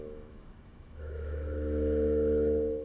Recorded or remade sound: remade